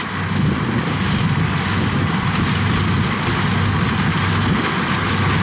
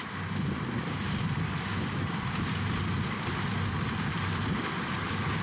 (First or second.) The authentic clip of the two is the first